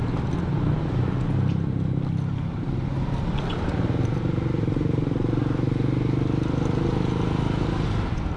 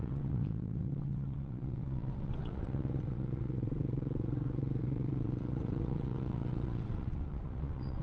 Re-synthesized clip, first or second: second